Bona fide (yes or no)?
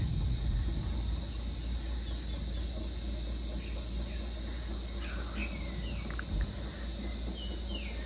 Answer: yes